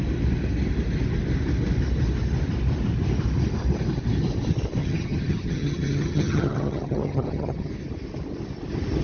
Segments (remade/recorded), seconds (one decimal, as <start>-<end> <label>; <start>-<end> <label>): 0.0-4.8 recorded; 4.8-7.7 remade; 7.7-9.0 recorded